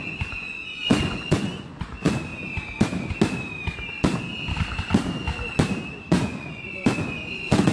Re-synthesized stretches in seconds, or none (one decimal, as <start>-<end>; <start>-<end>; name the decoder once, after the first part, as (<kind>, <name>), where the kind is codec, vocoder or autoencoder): 0.0-2.3 (vocoder, Vocos); 6.0-7.7